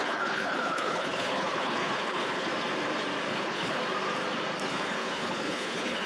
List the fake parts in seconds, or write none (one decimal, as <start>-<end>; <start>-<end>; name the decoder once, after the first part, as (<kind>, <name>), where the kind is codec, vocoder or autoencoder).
0.0-2.5 (codec, HILCodec); 3.3-3.8; 4.7-6.1